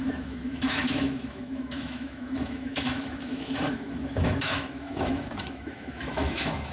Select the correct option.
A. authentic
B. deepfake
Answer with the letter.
B